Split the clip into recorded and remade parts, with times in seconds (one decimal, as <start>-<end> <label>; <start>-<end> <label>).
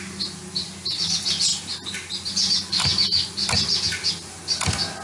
0.0-5.0 recorded